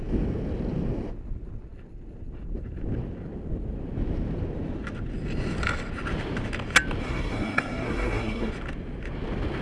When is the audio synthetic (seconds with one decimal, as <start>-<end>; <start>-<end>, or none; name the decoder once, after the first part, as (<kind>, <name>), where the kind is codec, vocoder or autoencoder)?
7.0-8.5 (codec, SNAC)